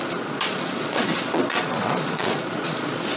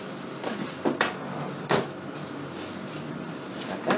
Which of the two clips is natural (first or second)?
second